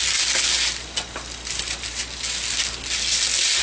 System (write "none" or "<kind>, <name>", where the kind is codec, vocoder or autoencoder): none